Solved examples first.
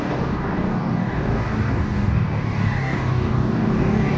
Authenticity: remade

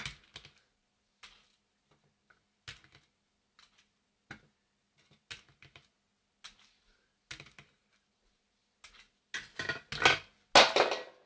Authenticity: recorded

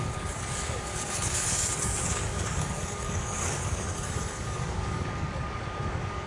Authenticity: remade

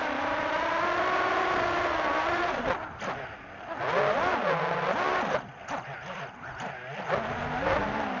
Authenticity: recorded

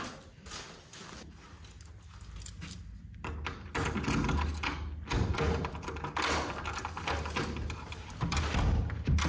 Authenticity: recorded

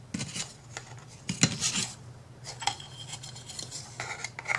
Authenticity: recorded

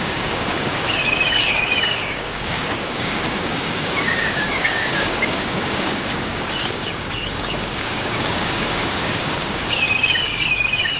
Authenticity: remade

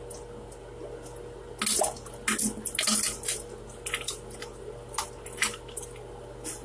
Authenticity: recorded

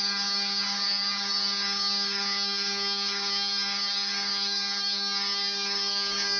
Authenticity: remade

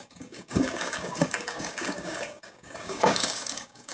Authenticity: remade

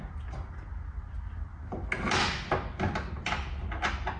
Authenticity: recorded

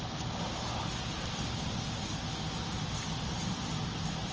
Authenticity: recorded